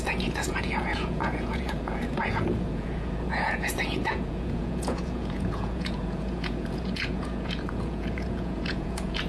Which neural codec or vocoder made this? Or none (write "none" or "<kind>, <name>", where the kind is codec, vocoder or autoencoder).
vocoder, Vocos